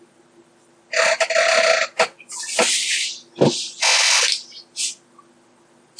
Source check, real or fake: real